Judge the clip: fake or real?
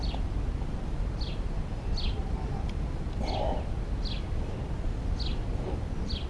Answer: real